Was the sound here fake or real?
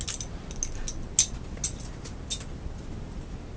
real